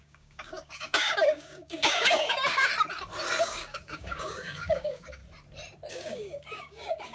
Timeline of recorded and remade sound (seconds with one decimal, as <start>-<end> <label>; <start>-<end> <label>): 0.0-2.7 remade; 2.7-3.4 recorded; 3.4-5.2 remade; 5.2-5.9 recorded; 5.9-7.1 remade

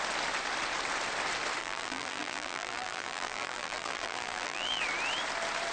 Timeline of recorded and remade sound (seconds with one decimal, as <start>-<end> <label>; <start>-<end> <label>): 0.0-1.6 recorded; 1.6-4.8 remade; 4.8-5.7 recorded

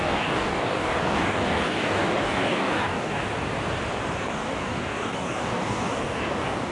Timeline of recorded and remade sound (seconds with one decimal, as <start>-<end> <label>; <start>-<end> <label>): 0.0-3.2 remade; 3.2-4.2 recorded; 4.2-6.7 remade

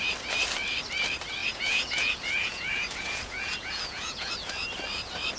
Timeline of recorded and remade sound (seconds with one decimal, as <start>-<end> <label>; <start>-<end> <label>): 0.0-1.4 recorded; 1.4-4.3 remade; 4.3-5.4 recorded

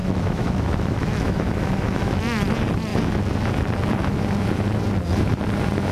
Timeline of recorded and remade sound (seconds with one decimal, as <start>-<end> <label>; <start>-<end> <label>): 0.0-2.2 remade; 2.2-5.9 recorded

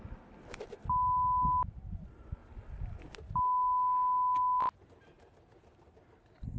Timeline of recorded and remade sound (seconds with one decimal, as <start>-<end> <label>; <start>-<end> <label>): 0.0-6.6 recorded

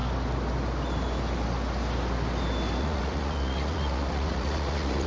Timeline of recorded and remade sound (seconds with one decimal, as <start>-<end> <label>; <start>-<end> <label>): 0.0-2.8 recorded; 2.8-5.1 remade